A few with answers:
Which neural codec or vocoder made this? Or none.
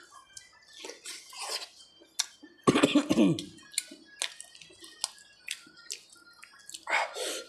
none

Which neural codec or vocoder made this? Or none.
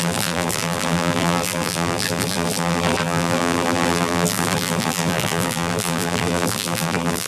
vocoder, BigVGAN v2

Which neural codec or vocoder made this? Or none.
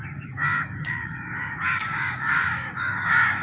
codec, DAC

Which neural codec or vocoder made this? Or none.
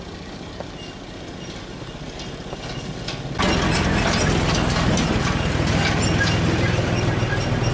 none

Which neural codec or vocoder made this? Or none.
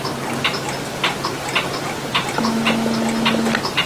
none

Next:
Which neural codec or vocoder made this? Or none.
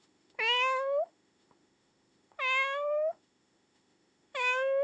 autoencoder, DAC-VAE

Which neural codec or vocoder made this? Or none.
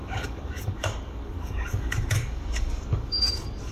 codec, DAC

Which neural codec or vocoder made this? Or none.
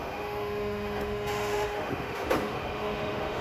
autoencoder, DAC-VAE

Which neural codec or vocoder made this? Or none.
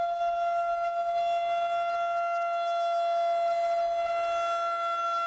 none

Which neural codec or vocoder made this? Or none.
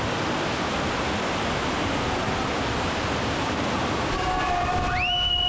none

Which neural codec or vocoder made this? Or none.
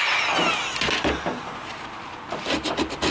none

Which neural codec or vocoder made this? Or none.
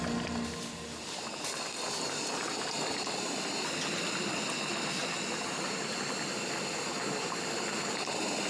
none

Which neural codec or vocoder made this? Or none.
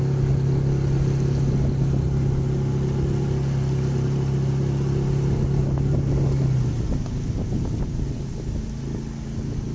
none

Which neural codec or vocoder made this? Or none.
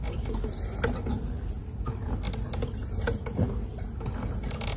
none